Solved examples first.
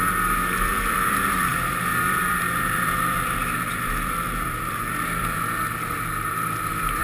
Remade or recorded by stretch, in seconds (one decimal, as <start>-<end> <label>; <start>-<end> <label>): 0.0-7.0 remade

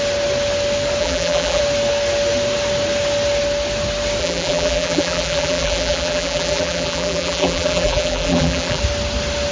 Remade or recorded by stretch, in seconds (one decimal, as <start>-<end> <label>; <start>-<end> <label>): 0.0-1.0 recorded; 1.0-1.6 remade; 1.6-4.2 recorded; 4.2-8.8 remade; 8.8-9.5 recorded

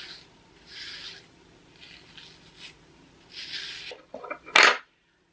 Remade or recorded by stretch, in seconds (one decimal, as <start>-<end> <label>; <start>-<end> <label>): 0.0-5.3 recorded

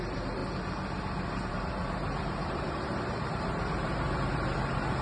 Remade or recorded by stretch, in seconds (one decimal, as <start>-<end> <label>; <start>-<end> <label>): 0.0-0.4 remade; 0.4-1.5 recorded; 1.5-5.0 remade

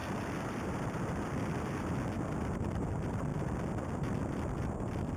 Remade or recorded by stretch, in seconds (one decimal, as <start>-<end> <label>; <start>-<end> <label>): 0.0-3.3 remade; 3.3-4.2 recorded; 4.2-5.2 remade

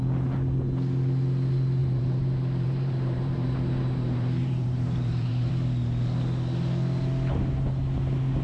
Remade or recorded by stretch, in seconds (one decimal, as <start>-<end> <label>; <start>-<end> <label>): 0.0-1.8 recorded; 1.8-5.5 remade; 5.5-8.4 recorded